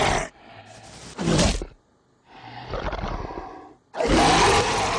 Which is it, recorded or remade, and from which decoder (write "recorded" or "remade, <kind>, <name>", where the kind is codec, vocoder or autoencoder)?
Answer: recorded